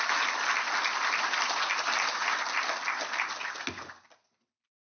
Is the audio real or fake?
real